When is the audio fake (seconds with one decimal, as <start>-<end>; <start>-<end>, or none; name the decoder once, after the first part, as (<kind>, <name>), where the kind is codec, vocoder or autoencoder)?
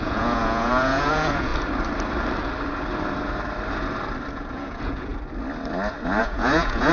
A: 0.0-1.5 (vocoder, Vocos); 4.3-5.1; 6.2-6.9